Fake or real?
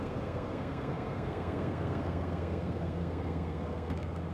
fake